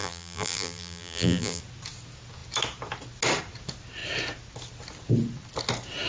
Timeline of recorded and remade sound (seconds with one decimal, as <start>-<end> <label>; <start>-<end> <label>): 0.0-1.6 remade; 1.6-6.1 recorded